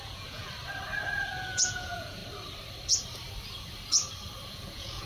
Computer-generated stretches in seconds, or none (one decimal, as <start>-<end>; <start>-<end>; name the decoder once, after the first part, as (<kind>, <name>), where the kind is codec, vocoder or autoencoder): 0.0-0.4 (vocoder, Vocos); 1.2-2.2; 4.5-5.1